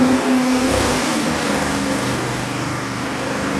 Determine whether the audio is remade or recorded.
remade